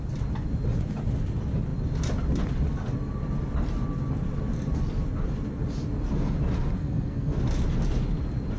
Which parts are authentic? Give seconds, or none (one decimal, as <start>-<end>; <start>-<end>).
0.0-6.8; 7.4-8.6